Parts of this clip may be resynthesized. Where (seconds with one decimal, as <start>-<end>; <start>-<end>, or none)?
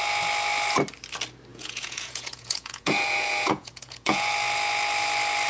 1.5-4.3